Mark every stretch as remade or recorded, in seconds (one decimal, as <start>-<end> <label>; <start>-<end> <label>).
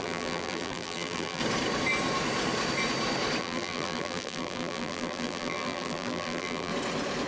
0.0-1.4 remade; 1.4-3.4 recorded; 3.4-6.7 remade; 6.7-7.3 recorded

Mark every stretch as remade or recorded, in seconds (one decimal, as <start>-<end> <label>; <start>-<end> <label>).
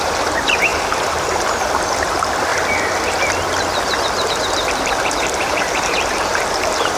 0.0-0.7 remade; 0.7-1.9 recorded; 1.9-2.5 remade; 2.5-4.3 recorded; 4.3-7.0 remade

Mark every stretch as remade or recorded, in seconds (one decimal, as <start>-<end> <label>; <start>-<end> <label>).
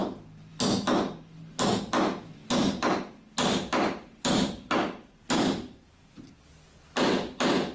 0.0-2.4 recorded; 2.4-5.8 remade; 5.8-7.7 recorded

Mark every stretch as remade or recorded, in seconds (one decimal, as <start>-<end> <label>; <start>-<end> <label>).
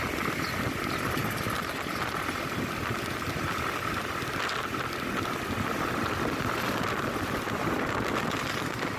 0.0-9.0 recorded